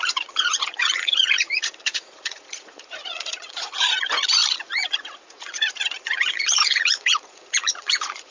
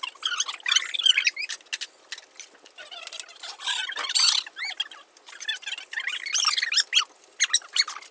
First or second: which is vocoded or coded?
first